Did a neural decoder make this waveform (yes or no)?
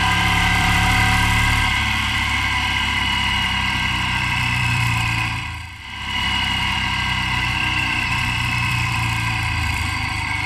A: yes